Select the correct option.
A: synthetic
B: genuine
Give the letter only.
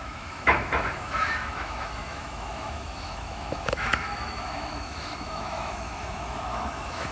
A